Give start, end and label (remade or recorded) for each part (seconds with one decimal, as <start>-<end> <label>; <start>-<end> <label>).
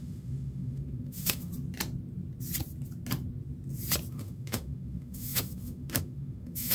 0.0-1.5 remade; 1.5-4.1 recorded; 4.1-6.7 remade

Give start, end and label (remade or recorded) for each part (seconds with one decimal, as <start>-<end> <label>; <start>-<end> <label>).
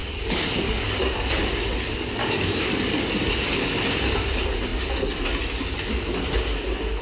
0.0-0.9 remade; 0.9-2.2 recorded; 2.2-3.1 remade; 3.1-7.0 recorded